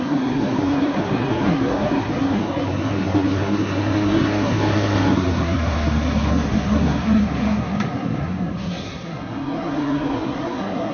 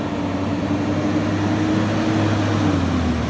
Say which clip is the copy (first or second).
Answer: first